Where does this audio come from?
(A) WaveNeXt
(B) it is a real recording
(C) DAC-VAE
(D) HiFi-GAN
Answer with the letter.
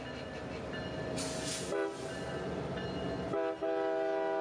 B